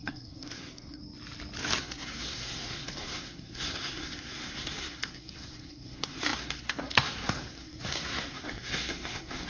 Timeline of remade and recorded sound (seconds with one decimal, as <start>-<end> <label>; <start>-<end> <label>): 0.0-1.0 remade; 1.0-1.8 recorded; 1.8-9.5 remade